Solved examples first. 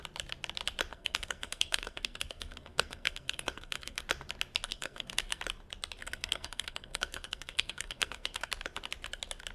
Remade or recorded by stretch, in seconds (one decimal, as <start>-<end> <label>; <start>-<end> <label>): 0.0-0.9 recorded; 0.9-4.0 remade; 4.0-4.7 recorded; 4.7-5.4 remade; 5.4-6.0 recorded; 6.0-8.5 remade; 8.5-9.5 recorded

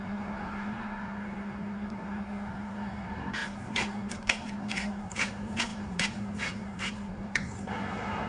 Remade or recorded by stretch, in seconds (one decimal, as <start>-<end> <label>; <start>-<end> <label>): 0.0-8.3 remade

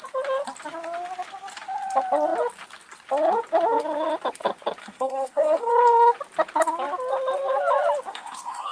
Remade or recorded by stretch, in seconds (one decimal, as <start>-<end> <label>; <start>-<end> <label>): 0.0-4.8 recorded; 4.8-5.7 remade; 5.7-8.1 recorded; 8.1-8.7 remade

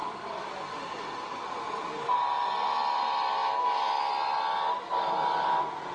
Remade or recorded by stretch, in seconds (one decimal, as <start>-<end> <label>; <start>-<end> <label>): 0.0-5.9 recorded

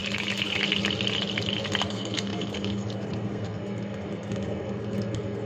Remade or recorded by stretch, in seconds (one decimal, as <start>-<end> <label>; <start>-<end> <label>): 0.0-1.9 recorded; 1.9-5.5 remade